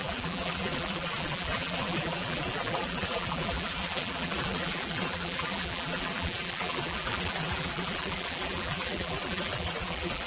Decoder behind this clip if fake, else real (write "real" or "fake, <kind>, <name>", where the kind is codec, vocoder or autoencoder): fake, vocoder, BigVGAN v2